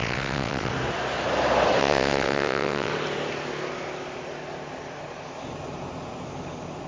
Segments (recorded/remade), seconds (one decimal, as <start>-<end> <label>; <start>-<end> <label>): 0.0-0.7 remade; 0.7-1.8 recorded; 1.8-2.9 remade; 2.9-6.9 recorded